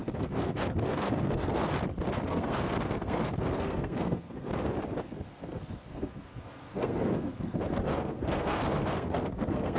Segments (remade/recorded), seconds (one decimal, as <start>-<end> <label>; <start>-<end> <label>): 0.0-1.6 remade; 1.6-2.3 recorded; 2.3-4.5 remade; 4.5-5.0 recorded; 5.0-9.8 remade